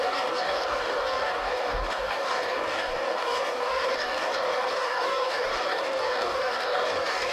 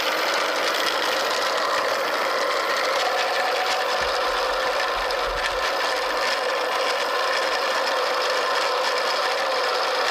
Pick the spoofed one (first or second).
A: first